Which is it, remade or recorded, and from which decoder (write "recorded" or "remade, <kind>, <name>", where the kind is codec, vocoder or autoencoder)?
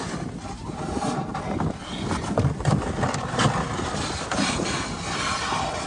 recorded